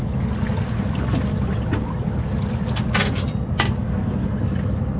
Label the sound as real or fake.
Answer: real